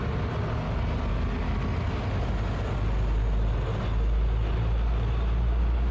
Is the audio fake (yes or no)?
no